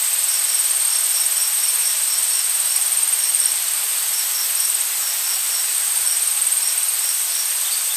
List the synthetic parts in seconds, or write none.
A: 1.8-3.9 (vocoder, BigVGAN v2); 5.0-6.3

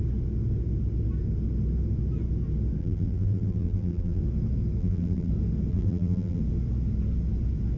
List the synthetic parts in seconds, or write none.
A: 2.8-4.2 (vocoder, BigVGAN v2); 4.8-5.3; 5.7-6.4

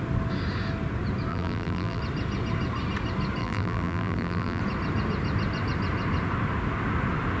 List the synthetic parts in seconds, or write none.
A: 1.3-2.0 (vocoder, BigVGAN v2); 3.4-4.6

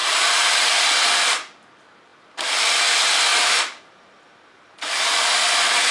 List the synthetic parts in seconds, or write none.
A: 0.0-0.9 (vocoder, BigVGAN v2); 3.3-5.4